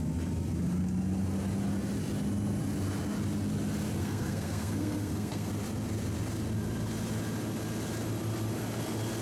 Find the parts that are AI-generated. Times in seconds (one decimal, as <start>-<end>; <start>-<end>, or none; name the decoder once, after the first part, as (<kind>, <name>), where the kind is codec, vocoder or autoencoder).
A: 4.0-5.5 (codec, SNAC)